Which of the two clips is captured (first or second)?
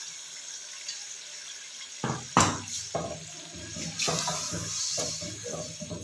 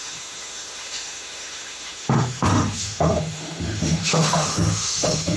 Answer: first